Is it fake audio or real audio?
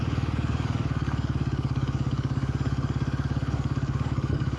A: fake